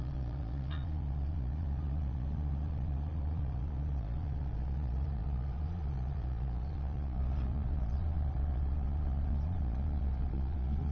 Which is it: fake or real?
fake